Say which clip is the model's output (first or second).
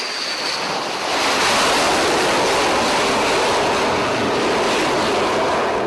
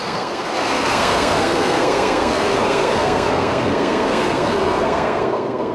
second